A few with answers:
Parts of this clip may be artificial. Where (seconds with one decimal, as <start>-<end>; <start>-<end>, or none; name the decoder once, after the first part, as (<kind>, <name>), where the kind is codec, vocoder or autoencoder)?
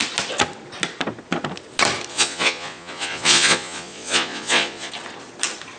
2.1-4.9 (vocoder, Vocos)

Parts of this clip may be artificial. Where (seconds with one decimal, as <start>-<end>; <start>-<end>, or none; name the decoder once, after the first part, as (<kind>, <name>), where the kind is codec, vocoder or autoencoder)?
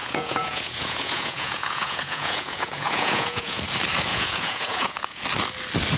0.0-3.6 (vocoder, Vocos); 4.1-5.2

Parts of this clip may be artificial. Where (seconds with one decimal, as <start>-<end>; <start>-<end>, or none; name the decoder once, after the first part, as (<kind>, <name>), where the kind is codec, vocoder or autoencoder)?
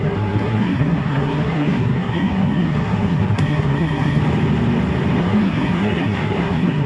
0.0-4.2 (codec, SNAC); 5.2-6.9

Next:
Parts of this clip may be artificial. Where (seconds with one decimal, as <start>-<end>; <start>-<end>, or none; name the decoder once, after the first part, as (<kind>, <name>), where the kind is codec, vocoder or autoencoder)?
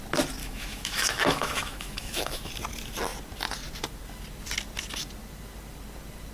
0.4-2.5 (autoencoder, DAC-VAE)